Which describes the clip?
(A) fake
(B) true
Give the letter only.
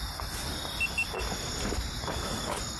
B